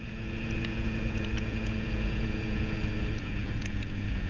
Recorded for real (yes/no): no